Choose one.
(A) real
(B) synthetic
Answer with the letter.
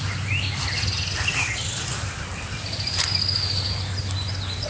A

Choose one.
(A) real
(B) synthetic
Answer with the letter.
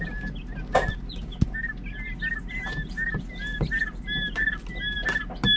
A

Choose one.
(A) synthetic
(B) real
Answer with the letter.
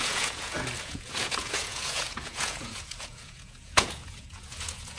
A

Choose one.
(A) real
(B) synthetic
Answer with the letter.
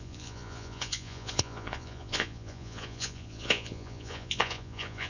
B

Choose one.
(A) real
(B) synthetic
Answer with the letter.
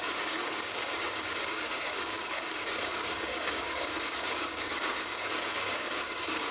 B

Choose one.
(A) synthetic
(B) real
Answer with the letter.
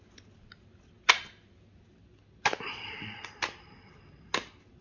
B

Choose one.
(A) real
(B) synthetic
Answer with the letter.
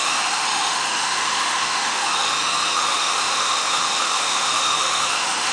B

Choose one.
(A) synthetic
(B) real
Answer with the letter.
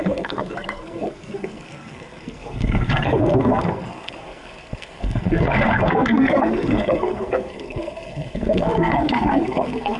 A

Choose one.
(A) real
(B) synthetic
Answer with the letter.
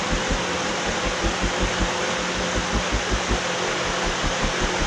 A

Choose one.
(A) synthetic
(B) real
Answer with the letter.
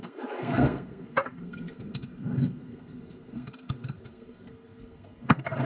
A